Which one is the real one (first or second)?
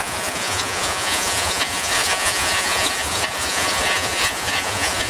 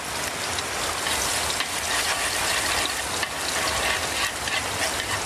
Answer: second